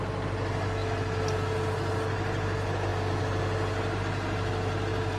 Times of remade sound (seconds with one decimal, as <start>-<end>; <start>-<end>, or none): none